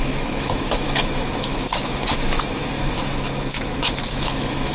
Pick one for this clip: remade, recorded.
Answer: remade